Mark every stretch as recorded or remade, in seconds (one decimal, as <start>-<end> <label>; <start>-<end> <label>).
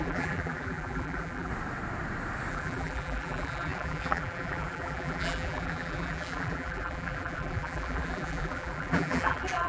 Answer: 0.0-1.5 remade; 1.5-2.5 recorded; 2.5-9.7 remade